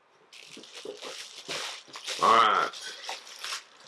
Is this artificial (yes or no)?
no